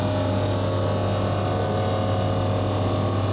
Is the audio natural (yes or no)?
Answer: yes